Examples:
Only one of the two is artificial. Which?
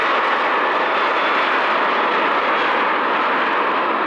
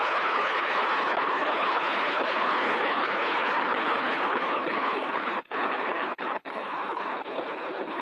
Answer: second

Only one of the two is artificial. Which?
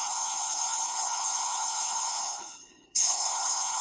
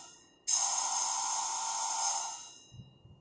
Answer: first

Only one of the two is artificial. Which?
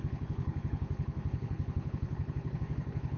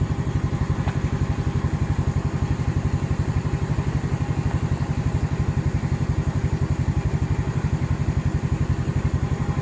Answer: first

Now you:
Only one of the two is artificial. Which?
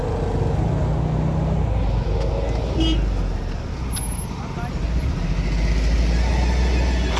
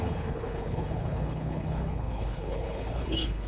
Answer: second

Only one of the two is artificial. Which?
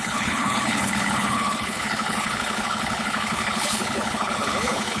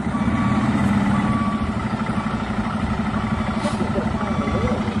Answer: first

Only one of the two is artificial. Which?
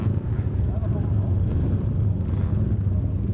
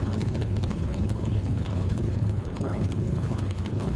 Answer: second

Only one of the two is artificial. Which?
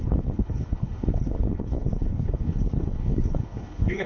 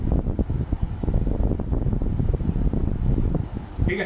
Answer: first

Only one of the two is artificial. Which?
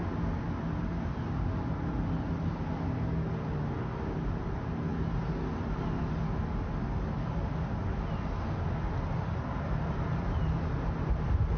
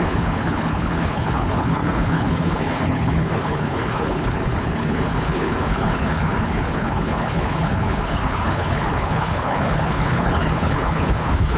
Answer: second